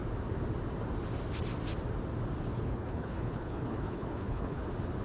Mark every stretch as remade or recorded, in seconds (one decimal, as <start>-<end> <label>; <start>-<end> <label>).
0.0-2.5 recorded; 2.5-4.6 remade; 4.6-5.0 recorded